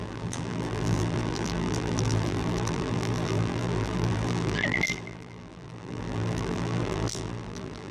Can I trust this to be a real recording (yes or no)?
no